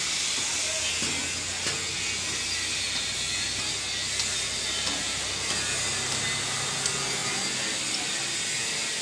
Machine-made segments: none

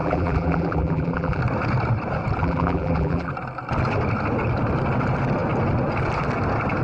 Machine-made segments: 0.0-1.4 (vocoder, BigVGAN v2); 2.4-3.3

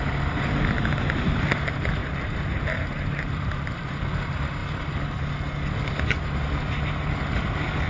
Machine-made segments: 2.0-3.4 (vocoder, BigVGAN v2); 4.6-5.3

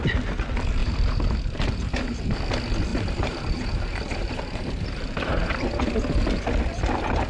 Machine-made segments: 0.8-2.4 (vocoder, BigVGAN v2); 2.9-5.2

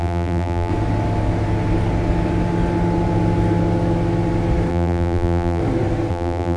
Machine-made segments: 0.0-0.7 (vocoder, BigVGAN v2); 4.7-5.6; 6.1-6.6

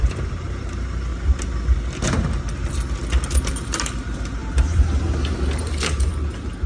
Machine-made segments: 0.0-1.1 (vocoder, BigVGAN v2); 3.5-6.1

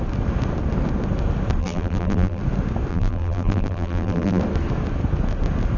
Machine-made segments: 1.6-2.4 (vocoder, BigVGAN v2); 2.9-4.4

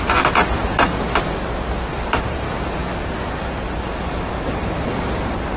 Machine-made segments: 0.0-0.9 (vocoder, BigVGAN v2); 1.9-2.8; 3.3-5.6